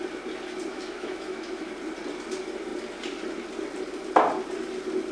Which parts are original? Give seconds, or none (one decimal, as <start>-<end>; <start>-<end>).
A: 0.0-0.7; 1.7-5.1